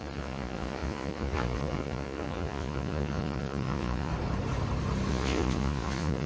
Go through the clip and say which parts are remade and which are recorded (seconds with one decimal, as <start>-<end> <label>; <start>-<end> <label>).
0.0-4.1 remade; 4.1-5.1 recorded; 5.1-6.3 remade